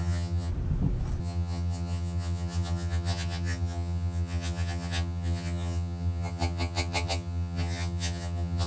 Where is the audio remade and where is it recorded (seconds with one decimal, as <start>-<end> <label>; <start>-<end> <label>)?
0.0-0.5 remade; 0.5-1.2 recorded; 1.2-8.7 remade